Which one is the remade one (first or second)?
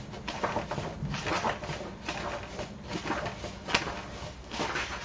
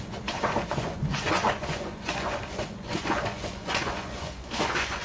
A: second